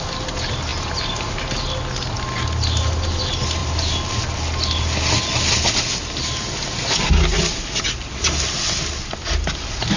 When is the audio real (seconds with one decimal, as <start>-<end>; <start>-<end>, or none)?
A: 0.0-10.0